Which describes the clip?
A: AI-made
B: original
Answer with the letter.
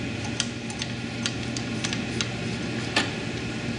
B